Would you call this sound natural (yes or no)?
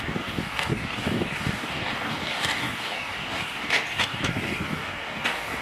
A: no